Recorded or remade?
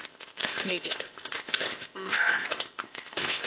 remade